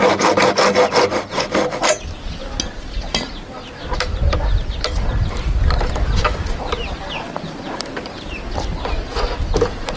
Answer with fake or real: real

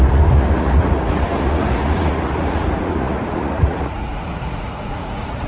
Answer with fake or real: fake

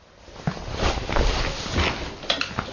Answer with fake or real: real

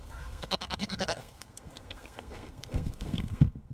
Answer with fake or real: fake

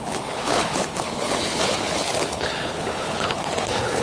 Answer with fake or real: fake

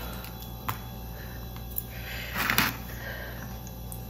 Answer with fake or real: real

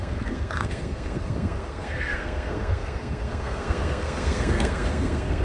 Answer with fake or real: fake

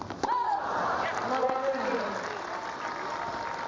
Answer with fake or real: real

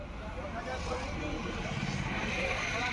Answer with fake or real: real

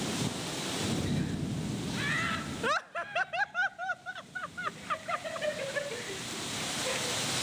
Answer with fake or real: real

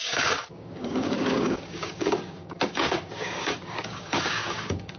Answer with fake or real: fake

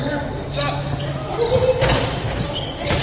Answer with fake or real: real